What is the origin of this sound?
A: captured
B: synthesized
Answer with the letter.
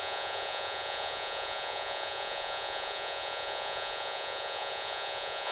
B